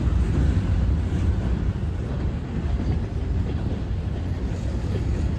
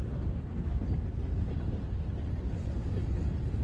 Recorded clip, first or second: second